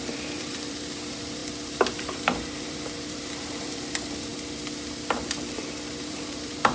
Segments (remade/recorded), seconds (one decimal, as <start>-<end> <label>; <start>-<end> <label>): 0.0-4.3 remade; 4.3-6.0 recorded; 6.0-6.7 remade